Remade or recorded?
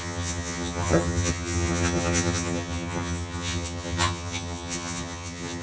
remade